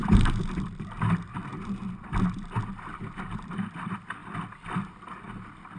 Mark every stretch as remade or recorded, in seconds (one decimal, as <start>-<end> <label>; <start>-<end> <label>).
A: 0.0-1.4 remade; 1.4-2.9 recorded; 2.9-5.8 remade